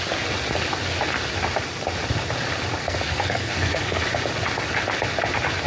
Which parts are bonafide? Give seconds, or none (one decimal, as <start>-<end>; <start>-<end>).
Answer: 0.0-2.8; 4.0-5.7